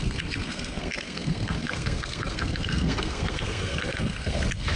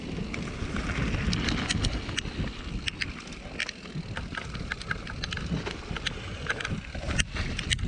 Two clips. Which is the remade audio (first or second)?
first